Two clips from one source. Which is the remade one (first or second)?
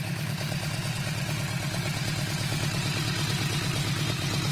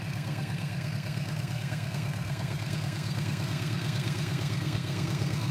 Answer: second